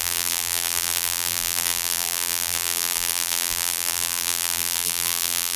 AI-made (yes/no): yes